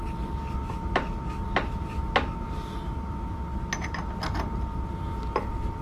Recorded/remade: recorded